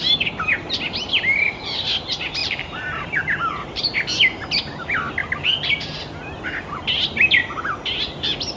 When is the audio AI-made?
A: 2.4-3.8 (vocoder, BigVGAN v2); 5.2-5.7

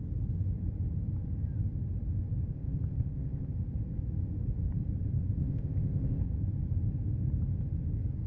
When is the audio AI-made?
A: 2.5-3.5 (codec, ZipCodec); 5.4-6.2

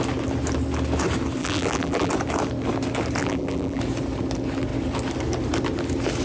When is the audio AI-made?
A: 1.4-2.1 (vocoder, BigVGAN v2); 3.2-3.8

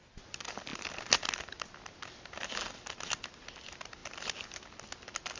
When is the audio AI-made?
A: none

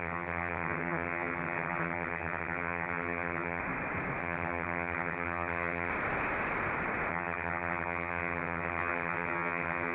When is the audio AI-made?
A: 0.0-3.6 (vocoder, HiFi-GAN); 4.2-5.9; 7.1-9.9

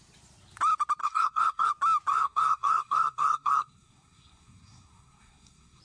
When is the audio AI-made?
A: 1.0-1.7 (codec, SNAC); 2.1-5.8